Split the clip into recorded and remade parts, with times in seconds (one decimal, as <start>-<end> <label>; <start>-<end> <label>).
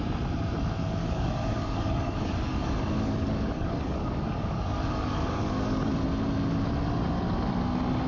0.0-1.0 recorded; 1.0-5.9 remade; 5.9-8.1 recorded